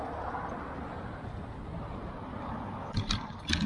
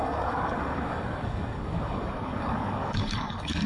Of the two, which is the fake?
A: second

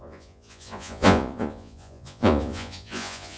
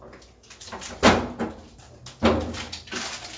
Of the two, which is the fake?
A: first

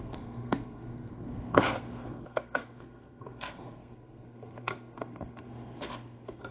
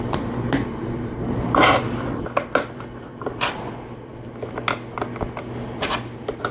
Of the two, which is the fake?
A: first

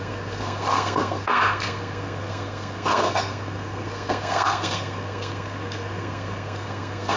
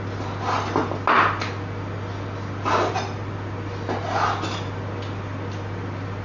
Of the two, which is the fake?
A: first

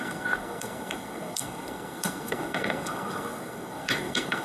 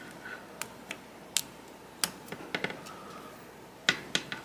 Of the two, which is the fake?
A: first